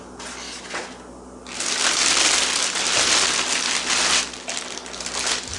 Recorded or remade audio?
recorded